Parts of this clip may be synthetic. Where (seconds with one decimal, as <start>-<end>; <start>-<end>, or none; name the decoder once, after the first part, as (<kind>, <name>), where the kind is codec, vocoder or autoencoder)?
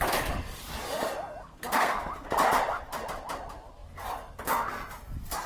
1.4-2.0 (codec, SNAC)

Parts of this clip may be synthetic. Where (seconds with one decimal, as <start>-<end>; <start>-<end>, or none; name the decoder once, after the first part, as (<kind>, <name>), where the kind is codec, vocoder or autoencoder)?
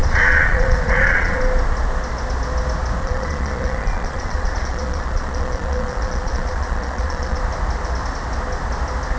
0.0-1.4 (vocoder, Vocos); 3.0-7.4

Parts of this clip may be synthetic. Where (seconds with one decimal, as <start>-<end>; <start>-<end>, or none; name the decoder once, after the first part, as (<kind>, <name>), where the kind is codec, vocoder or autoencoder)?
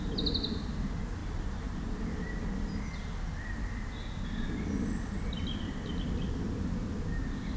none